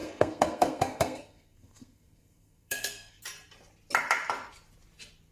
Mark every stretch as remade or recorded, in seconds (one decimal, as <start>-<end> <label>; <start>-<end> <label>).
0.0-3.2 remade; 3.2-5.3 recorded